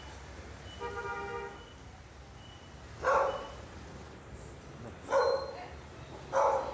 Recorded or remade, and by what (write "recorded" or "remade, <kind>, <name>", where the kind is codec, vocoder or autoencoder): recorded